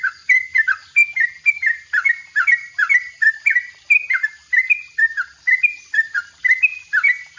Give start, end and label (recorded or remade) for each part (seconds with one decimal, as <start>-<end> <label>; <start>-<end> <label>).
0.0-7.4 recorded

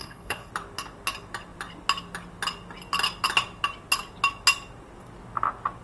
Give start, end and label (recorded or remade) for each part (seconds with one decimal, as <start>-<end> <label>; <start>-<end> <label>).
0.0-0.5 remade; 0.5-5.8 recorded

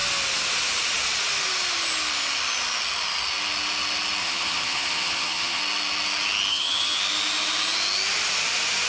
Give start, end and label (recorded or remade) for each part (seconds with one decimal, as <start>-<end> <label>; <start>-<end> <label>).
0.0-4.2 recorded; 4.2-5.6 remade; 5.6-6.5 recorded; 6.5-7.0 remade; 7.0-8.9 recorded

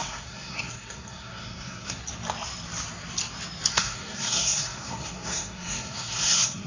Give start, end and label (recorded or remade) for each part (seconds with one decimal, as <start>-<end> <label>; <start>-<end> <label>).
0.0-2.0 remade; 2.0-3.7 recorded; 3.7-6.7 remade

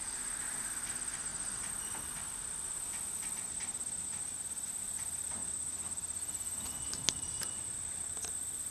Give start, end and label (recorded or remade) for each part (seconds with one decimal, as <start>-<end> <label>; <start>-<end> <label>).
0.0-8.7 recorded

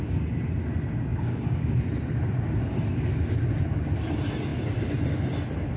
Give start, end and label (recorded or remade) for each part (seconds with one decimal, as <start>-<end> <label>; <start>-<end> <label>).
0.0-1.1 recorded; 1.1-1.8 remade; 1.8-5.8 recorded

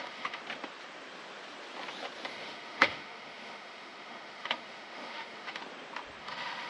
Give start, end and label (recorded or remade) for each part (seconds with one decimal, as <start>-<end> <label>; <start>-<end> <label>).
0.0-0.4 remade; 0.4-2.3 recorded; 2.3-5.6 remade; 5.6-6.2 recorded; 6.2-6.7 remade

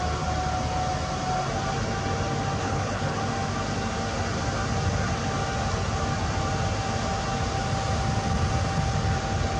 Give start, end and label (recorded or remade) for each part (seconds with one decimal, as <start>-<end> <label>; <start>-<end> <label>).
0.0-2.6 recorded; 2.6-3.2 remade; 3.2-9.6 recorded